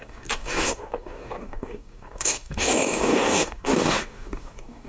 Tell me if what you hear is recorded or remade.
remade